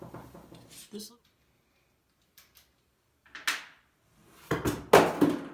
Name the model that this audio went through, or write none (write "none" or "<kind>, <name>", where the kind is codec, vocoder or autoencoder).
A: none